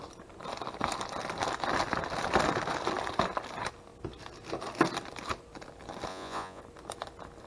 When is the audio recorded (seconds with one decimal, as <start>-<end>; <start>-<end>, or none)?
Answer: 0.0-6.1; 6.6-7.5

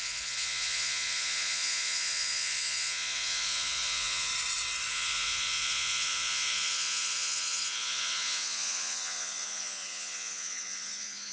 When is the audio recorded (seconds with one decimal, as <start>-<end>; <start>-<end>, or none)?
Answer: 4.3-4.9

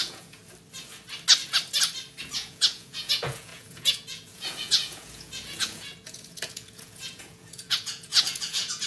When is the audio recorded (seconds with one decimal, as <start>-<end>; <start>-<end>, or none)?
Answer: 0.4-2.2

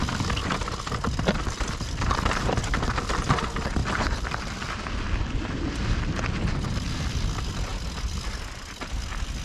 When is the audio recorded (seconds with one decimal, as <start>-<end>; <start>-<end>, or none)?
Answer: 0.0-9.4